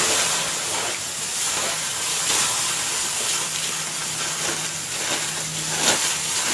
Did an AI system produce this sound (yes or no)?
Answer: no